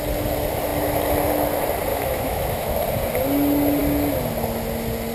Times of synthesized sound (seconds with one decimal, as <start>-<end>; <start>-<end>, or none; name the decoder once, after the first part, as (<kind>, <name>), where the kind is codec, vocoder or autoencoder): 1.9-2.7 (autoencoder, DAC-VAE)